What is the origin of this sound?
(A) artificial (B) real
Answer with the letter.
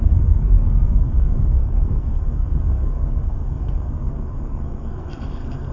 A